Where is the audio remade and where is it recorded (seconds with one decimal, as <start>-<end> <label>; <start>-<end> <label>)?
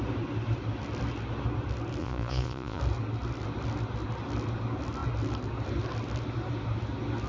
0.0-2.0 recorded; 2.0-2.8 remade; 2.8-7.3 recorded